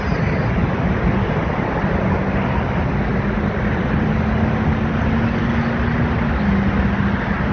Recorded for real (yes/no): yes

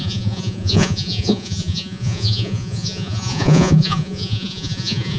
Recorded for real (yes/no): no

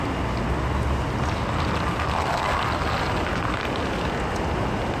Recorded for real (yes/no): yes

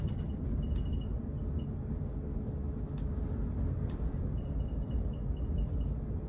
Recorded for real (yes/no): yes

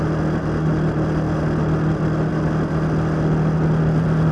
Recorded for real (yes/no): yes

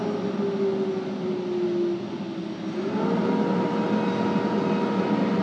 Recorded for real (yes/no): yes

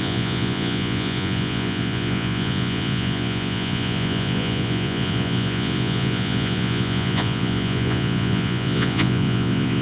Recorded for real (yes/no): no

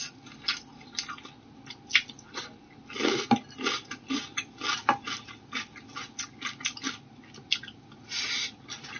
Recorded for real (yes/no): yes